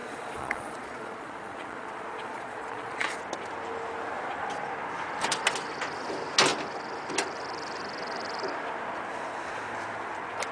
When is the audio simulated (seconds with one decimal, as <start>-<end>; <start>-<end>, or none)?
0.0-3.2